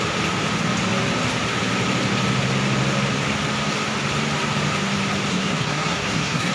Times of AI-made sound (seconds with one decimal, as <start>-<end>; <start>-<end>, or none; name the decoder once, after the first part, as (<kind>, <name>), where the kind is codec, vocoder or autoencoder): 5.3-6.5 (codec, SNAC)